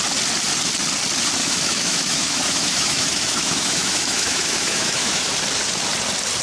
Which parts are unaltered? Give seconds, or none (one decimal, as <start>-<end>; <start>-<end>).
0.0-1.4; 5.2-6.4